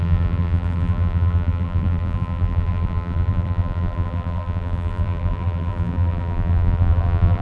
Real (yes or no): no